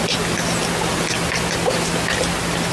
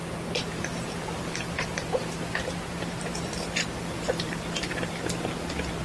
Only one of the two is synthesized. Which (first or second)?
second